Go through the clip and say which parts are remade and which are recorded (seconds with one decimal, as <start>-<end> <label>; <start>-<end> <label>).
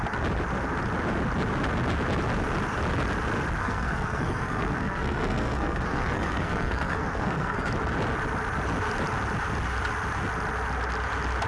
0.0-3.6 recorded; 3.6-7.7 remade; 7.7-11.5 recorded